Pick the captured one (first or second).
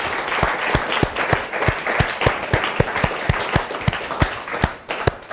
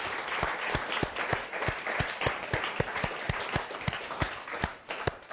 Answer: first